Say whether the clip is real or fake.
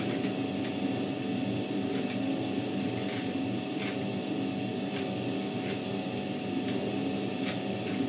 real